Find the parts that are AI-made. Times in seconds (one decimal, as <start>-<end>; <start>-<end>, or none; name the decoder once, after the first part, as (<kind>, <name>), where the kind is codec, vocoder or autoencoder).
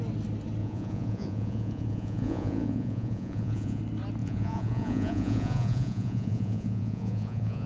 0.6-3.8 (vocoder, Vocos); 4.2-7.7